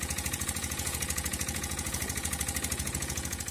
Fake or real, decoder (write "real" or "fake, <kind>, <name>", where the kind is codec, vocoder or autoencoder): fake, vocoder, Vocos